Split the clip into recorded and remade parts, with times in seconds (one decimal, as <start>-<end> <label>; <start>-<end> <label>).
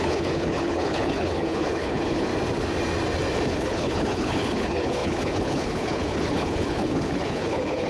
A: 0.0-2.3 remade; 2.3-3.5 recorded; 3.5-7.9 remade